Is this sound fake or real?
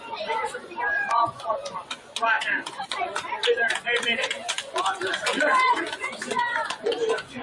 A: fake